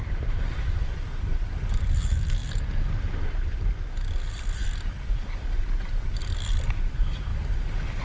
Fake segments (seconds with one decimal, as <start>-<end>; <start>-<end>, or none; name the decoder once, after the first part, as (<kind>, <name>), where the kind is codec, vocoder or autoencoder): 0.0-7.3 (vocoder, BigVGAN v2)